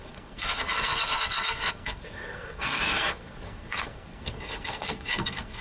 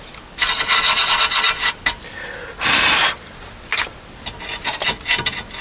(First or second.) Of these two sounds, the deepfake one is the first